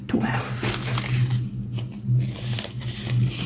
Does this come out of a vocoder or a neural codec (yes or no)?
no